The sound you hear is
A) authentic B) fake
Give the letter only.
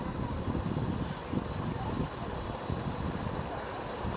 A